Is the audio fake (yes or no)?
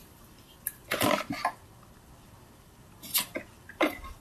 yes